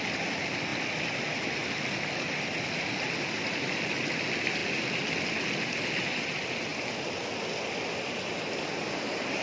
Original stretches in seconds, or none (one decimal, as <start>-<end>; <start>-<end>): 0.0-9.4